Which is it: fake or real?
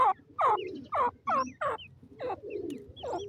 real